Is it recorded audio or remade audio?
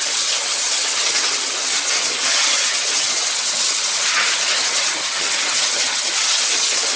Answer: remade